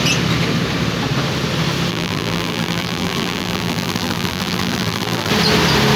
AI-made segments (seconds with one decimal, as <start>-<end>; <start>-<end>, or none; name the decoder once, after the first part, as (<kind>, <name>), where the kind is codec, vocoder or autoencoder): 1.9-5.3 (vocoder, BigVGAN v2)